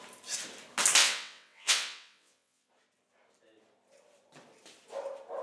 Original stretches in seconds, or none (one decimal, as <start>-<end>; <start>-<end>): 0.0-1.0; 2.7-5.4